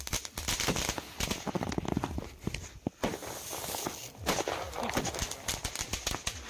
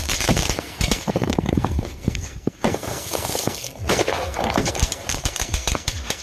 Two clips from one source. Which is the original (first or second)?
first